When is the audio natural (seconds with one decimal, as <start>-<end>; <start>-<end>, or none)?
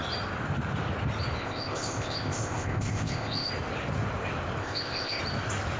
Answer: 0.0-1.4; 3.5-4.6; 5.2-5.8